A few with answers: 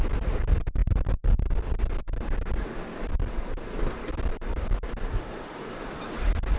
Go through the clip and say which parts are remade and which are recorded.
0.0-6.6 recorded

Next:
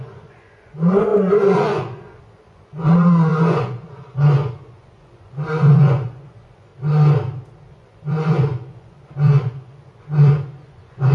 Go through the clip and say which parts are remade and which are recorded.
0.0-6.7 remade; 6.7-7.7 recorded; 7.7-11.1 remade

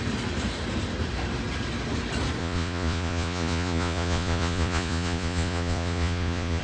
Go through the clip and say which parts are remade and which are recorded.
0.0-2.4 recorded; 2.4-6.6 remade